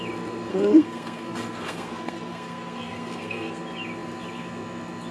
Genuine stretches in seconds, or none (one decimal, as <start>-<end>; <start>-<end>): 0.0-0.5; 3.6-5.1